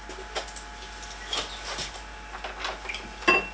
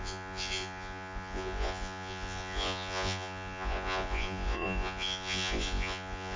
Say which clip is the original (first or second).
first